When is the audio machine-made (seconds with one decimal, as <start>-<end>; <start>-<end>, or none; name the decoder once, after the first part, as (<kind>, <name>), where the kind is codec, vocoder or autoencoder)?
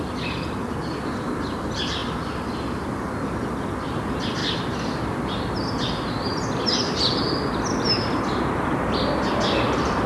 none